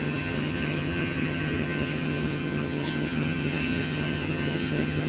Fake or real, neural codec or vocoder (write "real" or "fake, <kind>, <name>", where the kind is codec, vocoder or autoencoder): fake, vocoder, HiFi-GAN